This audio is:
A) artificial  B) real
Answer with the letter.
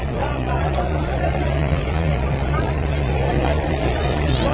A